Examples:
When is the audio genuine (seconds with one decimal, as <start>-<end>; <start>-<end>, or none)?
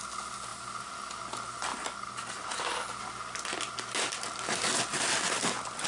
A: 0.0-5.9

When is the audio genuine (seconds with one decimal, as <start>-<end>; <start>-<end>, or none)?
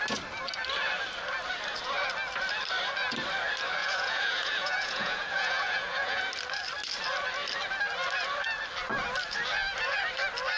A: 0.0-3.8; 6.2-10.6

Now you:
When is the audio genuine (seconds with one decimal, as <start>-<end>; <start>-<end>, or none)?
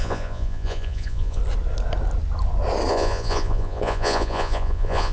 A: 1.4-2.9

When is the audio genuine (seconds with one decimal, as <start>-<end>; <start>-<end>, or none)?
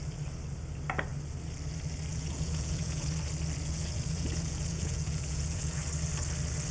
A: 0.0-2.1; 3.1-3.6; 5.8-6.7